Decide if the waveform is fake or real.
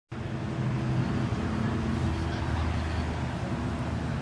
real